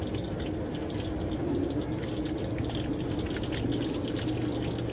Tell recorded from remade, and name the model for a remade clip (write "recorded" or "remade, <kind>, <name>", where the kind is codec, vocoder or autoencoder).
recorded